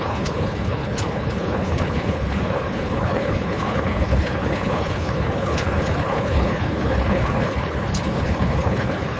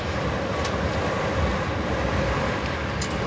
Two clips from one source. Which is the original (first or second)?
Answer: second